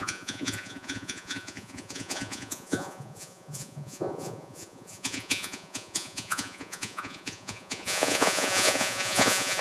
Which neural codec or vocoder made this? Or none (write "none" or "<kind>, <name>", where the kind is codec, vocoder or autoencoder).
vocoder, Vocos